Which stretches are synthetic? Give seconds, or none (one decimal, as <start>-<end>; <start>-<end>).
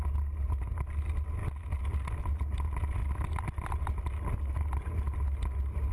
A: none